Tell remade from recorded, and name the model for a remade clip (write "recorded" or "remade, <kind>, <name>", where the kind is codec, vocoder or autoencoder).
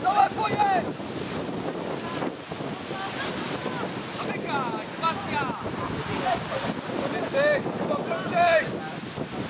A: recorded